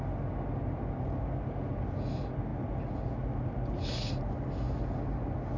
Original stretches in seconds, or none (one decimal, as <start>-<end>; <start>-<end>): 0.0-5.6